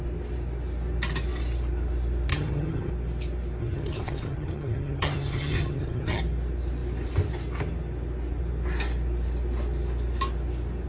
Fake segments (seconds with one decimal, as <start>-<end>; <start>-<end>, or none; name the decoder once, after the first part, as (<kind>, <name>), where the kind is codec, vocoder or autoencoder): 2.3-2.9 (vocoder, HiFi-GAN); 3.6-6.2